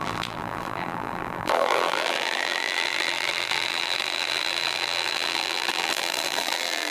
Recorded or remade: remade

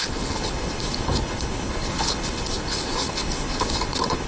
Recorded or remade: remade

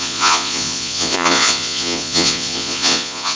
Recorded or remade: remade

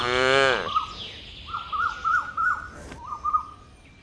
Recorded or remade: recorded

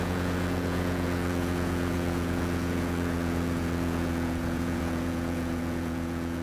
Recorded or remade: remade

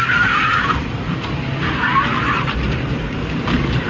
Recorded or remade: recorded